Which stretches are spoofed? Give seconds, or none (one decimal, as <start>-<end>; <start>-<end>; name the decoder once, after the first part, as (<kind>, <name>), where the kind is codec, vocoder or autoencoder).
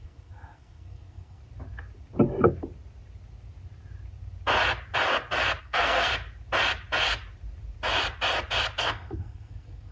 0.0-1.4 (codec, SNAC); 5.6-6.1; 8.8-9.9